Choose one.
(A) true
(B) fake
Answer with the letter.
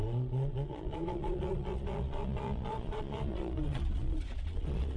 B